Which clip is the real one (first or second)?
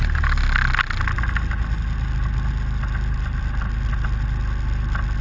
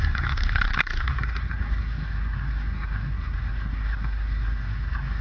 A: first